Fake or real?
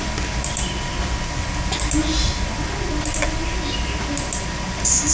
real